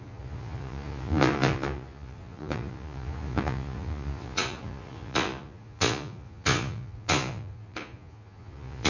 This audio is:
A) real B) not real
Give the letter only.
B